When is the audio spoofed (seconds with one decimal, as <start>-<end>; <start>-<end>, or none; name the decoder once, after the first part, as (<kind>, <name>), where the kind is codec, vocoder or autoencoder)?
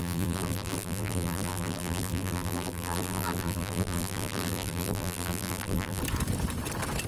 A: 0.0-6.0 (vocoder, BigVGAN v2)